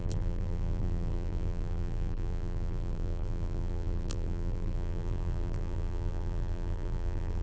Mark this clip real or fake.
fake